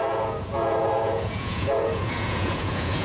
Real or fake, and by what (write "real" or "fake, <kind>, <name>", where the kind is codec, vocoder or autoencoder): fake, vocoder, Vocos